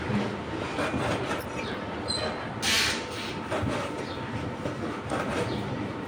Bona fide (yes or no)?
yes